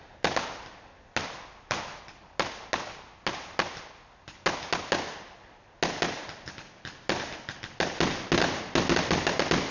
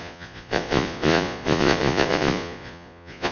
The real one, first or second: first